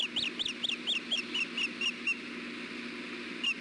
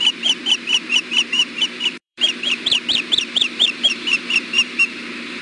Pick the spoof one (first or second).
second